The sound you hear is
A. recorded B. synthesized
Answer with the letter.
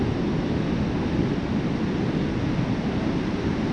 A